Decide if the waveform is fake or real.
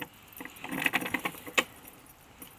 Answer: real